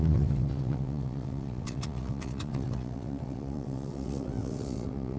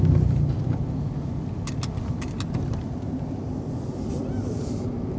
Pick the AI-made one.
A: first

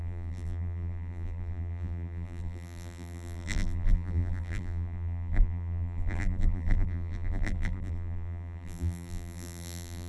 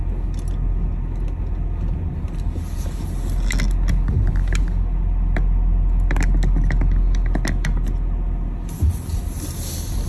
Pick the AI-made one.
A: first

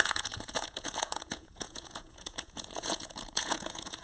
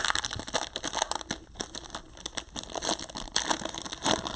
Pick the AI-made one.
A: first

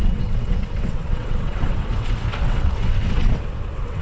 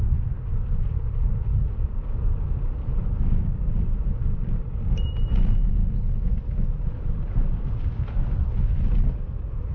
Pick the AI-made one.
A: first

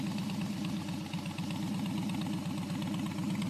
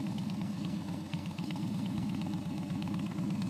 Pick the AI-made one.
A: second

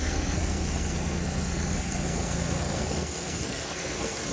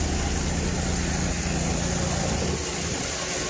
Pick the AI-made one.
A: first